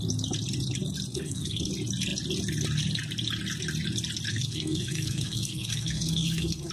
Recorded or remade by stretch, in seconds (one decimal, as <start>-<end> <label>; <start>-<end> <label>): 0.0-1.1 recorded; 1.1-1.7 remade; 1.7-4.3 recorded; 4.3-6.7 remade